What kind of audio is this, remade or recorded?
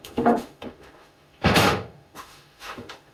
remade